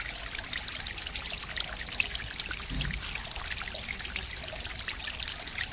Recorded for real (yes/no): yes